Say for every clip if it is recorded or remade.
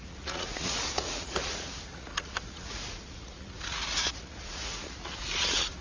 remade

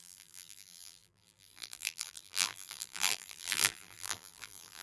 remade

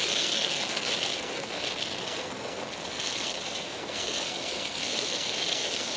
remade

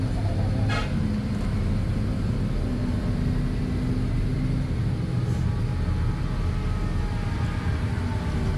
recorded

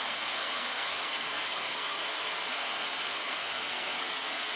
remade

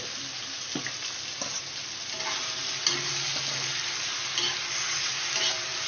recorded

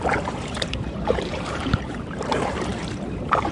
remade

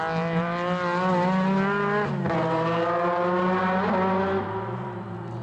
recorded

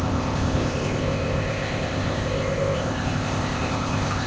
remade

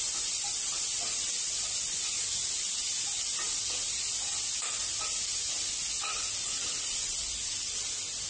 recorded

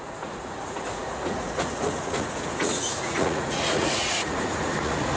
remade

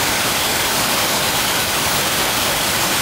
remade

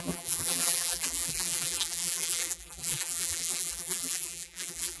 remade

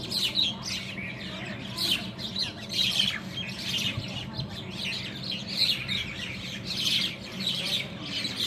recorded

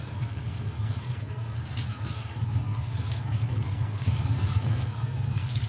remade